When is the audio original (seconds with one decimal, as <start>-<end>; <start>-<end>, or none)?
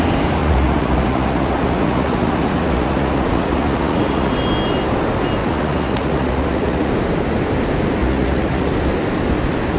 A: 0.0-0.4; 4.3-5.4; 6.9-8.0; 8.7-9.8